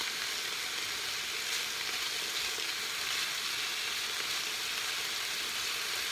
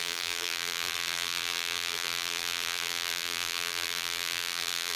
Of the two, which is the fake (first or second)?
second